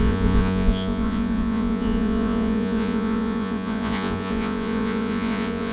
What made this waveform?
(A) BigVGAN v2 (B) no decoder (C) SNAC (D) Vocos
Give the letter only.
D